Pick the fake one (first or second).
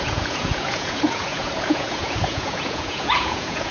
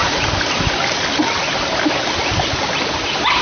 first